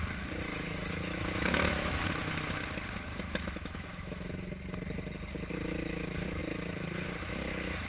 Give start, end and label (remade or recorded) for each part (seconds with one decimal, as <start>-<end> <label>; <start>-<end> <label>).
0.0-0.5 recorded; 0.5-2.1 remade; 2.1-3.1 recorded; 3.1-4.5 remade; 4.5-7.9 recorded